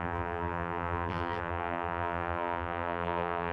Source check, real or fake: fake